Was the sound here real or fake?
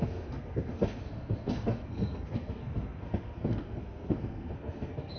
fake